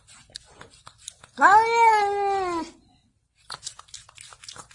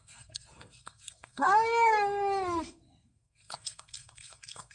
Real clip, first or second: first